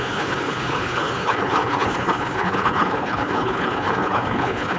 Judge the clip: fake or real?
fake